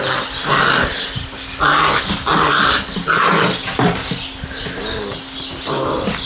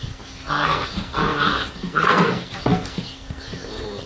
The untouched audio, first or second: first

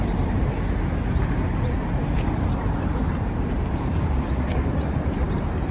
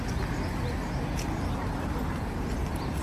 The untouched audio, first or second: second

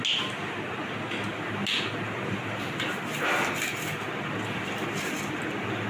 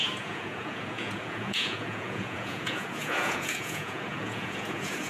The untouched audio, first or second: first